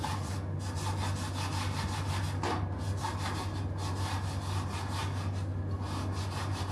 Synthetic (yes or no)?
no